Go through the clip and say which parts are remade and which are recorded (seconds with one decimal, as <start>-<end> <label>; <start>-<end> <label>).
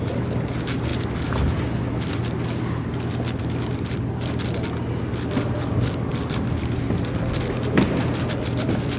0.0-9.0 recorded